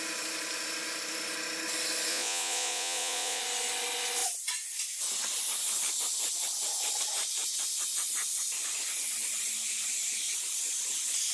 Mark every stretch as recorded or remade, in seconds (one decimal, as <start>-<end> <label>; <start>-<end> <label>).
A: 0.0-2.1 recorded; 2.1-3.4 remade; 3.4-11.3 recorded